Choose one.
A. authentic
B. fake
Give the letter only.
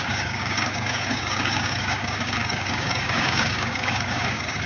B